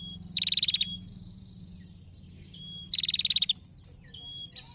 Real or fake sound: real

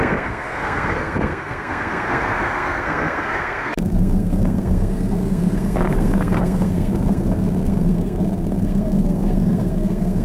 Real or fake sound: fake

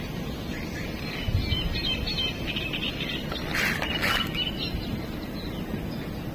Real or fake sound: real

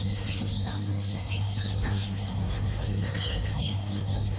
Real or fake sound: fake